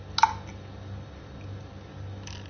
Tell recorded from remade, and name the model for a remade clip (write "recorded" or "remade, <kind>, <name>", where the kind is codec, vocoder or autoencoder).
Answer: recorded